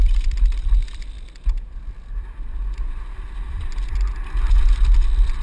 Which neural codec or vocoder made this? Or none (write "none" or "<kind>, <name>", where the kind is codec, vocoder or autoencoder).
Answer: vocoder, BigVGAN v2